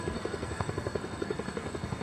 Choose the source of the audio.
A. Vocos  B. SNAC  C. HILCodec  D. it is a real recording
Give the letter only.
B